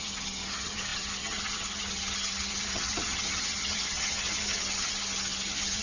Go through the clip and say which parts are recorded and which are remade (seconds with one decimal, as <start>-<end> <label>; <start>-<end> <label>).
0.0-5.8 remade